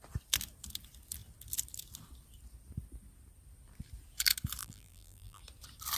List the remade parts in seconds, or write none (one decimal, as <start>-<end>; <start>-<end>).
4.6-5.4